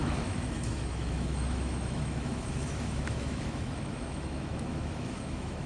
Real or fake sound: fake